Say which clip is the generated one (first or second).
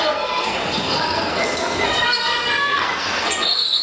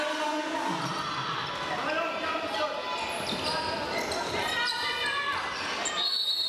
first